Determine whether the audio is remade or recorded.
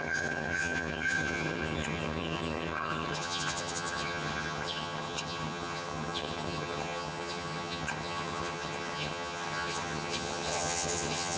remade